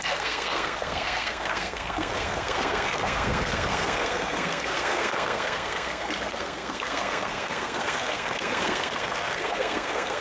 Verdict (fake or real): fake